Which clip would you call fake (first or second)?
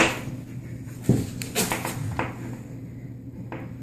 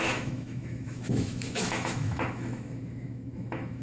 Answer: second